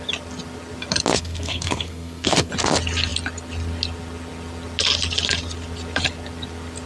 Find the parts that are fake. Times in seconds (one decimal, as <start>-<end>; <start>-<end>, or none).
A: 1.1-2.5